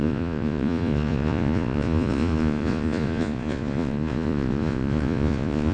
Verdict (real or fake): fake